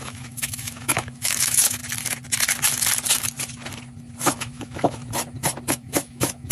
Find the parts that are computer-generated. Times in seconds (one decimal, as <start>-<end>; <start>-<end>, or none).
0.0-1.8; 4.2-5.0; 5.7-6.5